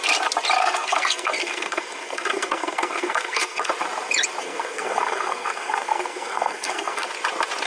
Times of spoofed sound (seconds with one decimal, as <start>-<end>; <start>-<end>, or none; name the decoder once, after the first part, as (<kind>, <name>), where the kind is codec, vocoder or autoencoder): 0.6-3.7 (codec, SNAC); 4.4-7.1